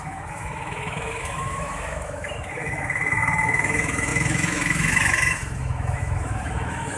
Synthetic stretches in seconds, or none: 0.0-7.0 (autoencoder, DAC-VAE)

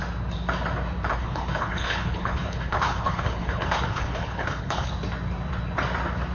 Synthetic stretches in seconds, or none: 1.1-4.9 (codec, HILCodec)

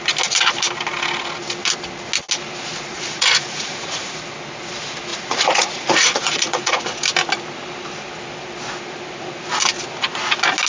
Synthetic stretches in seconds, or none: 2.9-4.2 (vocoder, Vocos); 5.1-6.8

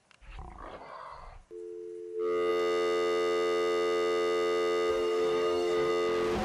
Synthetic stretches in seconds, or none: 4.9-5.9 (codec, DAC)

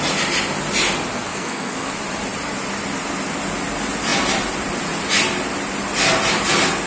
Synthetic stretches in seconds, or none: 1.3-1.9 (codec, SNAC)

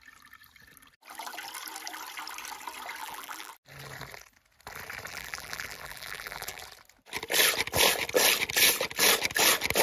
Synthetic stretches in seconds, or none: 3.0-3.5 (vocoder, BigVGAN v2); 5.1-6.6

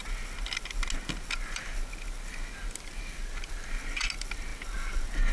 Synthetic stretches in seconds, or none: none

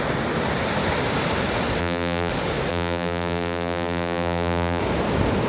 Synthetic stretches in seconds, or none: 1.8-2.3 (vocoder, BigVGAN v2); 2.7-4.8